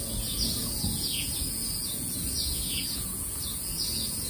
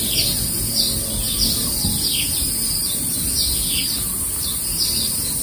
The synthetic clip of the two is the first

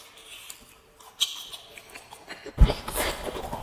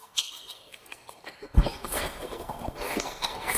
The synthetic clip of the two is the second